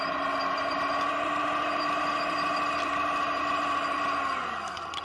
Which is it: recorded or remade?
recorded